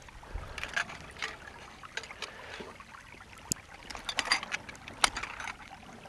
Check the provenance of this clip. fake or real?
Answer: real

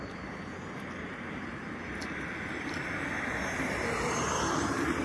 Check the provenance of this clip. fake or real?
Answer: real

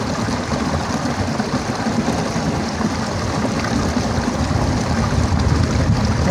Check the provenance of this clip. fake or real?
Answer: real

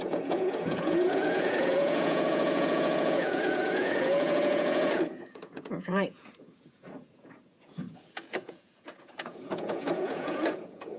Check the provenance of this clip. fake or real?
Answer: fake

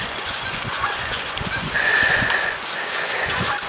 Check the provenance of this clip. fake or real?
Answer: fake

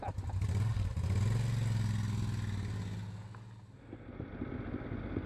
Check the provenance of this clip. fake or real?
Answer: real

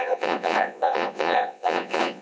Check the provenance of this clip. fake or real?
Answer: fake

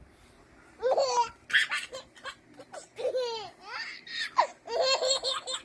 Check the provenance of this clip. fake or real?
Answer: real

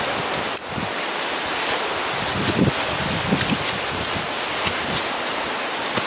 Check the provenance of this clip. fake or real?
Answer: real